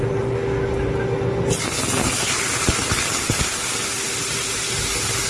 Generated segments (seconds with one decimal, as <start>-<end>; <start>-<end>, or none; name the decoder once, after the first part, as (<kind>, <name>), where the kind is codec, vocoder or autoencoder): none